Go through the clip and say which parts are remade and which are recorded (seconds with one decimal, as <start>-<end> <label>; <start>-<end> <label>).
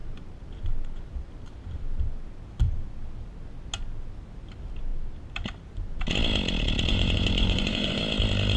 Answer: 0.0-6.9 recorded; 6.9-8.0 remade; 8.0-8.6 recorded